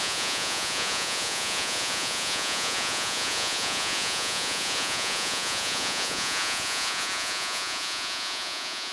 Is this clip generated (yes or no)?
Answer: yes